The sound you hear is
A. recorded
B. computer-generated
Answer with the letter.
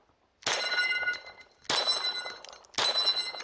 A